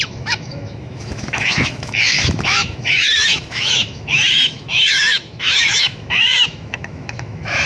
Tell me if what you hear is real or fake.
fake